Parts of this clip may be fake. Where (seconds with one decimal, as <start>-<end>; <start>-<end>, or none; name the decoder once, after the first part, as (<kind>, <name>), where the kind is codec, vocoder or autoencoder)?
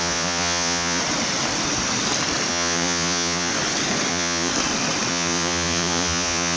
0.0-1.0 (vocoder, Vocos); 2.5-3.5; 4.1-4.5; 5.1-6.6